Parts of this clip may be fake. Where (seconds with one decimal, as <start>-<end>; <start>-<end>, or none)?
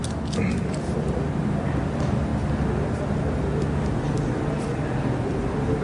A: none